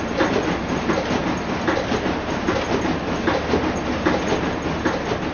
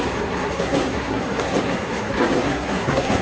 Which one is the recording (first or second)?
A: first